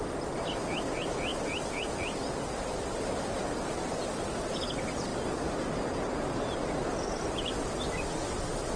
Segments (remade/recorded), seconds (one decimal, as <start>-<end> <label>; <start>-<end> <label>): 0.0-8.8 recorded